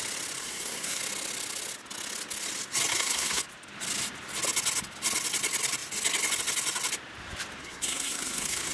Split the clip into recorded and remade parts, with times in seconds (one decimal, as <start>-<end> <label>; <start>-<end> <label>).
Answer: 0.0-0.4 recorded; 0.4-1.0 remade; 1.0-2.9 recorded; 2.9-3.4 remade; 3.4-7.6 recorded; 7.6-8.7 remade